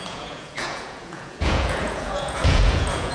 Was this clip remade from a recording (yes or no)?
yes